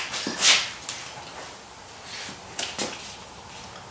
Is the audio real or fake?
real